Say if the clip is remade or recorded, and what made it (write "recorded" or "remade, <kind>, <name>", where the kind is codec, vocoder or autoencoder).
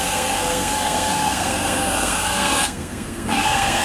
remade, codec, SNAC